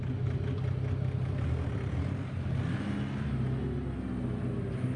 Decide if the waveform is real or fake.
real